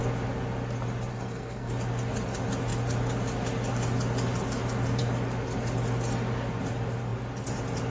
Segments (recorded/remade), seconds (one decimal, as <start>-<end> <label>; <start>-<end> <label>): 0.0-1.1 recorded; 1.1-1.7 remade; 1.7-7.9 recorded